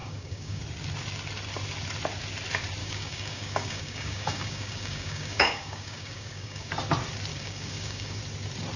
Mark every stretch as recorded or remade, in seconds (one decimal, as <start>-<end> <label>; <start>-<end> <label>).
0.0-0.6 remade; 0.6-2.8 recorded; 2.8-6.7 remade; 6.7-7.3 recorded; 7.3-8.2 remade; 8.2-8.8 recorded